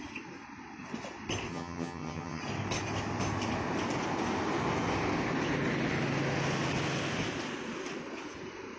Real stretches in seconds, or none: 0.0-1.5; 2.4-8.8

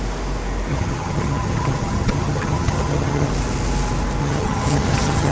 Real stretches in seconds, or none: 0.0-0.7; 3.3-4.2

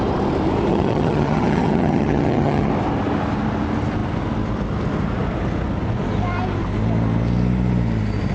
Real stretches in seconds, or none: 0.0-0.7; 2.7-8.3

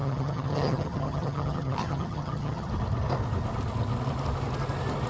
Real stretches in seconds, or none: 2.7-5.1